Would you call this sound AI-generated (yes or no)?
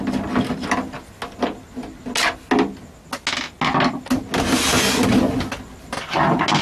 no